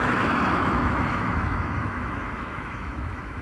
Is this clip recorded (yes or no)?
no